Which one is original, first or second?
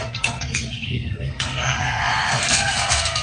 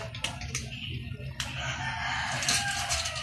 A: second